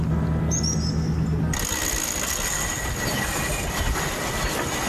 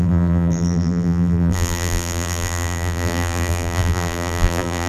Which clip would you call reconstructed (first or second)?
second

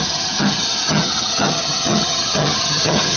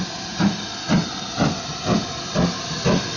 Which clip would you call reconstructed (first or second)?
first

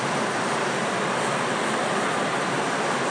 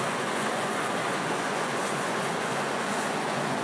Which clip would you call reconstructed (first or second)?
second